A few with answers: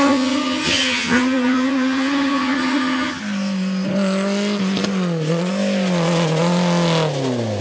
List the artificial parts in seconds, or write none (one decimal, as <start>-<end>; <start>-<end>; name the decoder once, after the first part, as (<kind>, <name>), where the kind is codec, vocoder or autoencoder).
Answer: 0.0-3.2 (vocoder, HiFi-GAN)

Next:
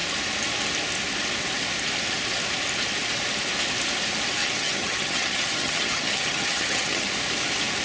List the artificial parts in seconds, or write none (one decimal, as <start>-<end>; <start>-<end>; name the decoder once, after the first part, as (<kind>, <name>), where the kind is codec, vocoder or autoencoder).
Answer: 4.4-7.1 (vocoder, HiFi-GAN)

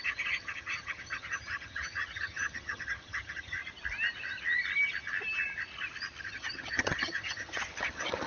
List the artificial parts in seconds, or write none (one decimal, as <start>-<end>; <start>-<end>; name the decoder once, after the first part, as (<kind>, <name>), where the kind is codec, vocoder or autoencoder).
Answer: 0.0-3.6 (vocoder, HiFi-GAN); 6.2-8.3

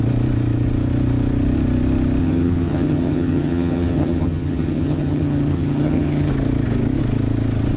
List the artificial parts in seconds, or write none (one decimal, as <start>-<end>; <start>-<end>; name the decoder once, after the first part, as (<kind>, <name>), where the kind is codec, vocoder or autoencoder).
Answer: 2.2-6.3 (vocoder, HiFi-GAN)

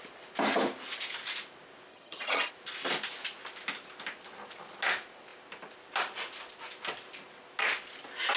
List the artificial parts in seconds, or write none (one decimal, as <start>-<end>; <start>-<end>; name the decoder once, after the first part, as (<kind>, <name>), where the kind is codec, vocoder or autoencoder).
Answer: 1.9-2.5 (vocoder, HiFi-GAN)